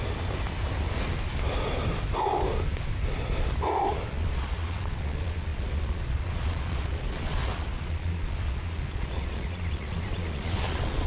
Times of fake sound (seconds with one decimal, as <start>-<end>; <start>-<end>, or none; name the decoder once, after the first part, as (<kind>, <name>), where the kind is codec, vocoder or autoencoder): 4.1-11.1 (vocoder, Vocos)